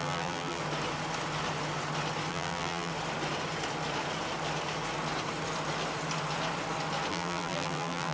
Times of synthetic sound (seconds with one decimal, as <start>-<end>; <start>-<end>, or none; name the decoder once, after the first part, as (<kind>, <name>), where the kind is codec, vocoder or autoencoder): 0.0-0.6 (vocoder, BigVGAN v2); 2.3-2.9; 7.1-8.1